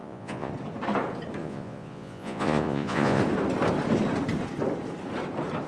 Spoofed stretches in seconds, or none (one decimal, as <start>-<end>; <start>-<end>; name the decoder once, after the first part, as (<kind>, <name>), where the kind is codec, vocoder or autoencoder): 0.0-0.5 (vocoder, Vocos); 1.4-3.2